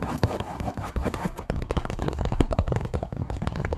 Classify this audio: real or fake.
fake